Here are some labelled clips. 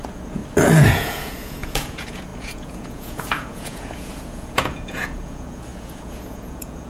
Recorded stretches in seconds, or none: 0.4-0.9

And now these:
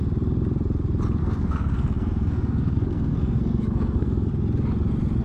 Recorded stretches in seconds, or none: 0.0-1.2; 4.3-5.2

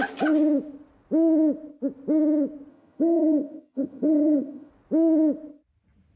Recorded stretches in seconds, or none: 0.0-2.7; 4.7-6.2

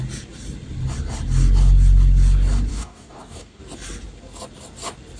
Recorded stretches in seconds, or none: 0.0-2.7; 3.6-5.2

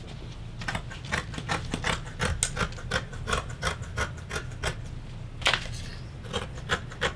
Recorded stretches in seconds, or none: 0.0-3.1; 3.7-7.2